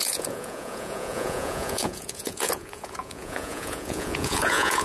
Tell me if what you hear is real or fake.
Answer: fake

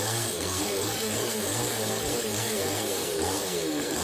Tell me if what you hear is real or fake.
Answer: fake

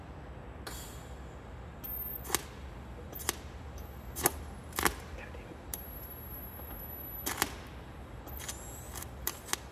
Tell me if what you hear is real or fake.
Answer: real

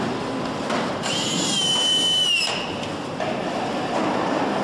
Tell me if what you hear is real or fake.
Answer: real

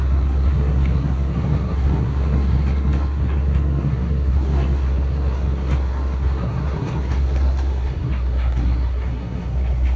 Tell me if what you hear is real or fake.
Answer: fake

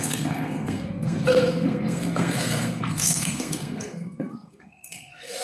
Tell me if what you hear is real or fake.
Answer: fake